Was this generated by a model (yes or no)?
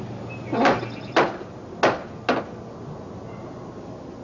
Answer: no